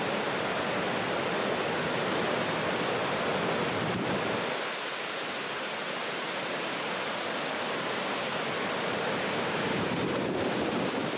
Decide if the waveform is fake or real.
real